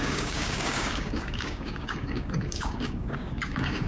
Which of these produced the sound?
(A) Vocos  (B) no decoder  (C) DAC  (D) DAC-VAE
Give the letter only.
C